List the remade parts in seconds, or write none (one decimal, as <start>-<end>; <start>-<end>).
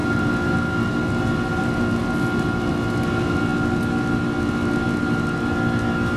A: none